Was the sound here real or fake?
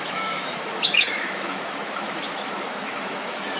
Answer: fake